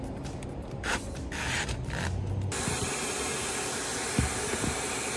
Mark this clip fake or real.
real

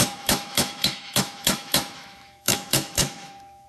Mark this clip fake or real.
fake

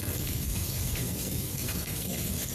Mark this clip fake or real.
fake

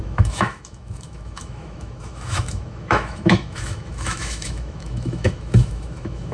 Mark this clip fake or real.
fake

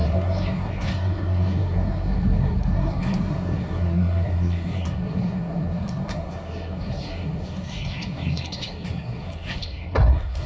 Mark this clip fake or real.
fake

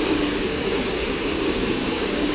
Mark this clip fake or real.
fake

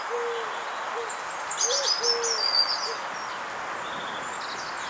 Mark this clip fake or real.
real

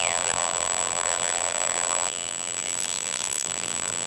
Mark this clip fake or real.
fake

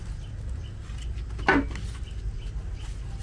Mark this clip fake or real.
real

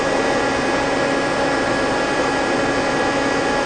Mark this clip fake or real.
real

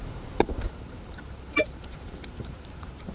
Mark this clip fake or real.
fake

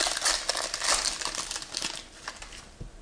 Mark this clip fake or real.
real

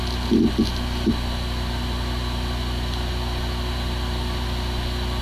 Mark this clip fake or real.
real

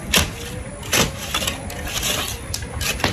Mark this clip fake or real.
real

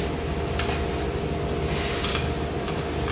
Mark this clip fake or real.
real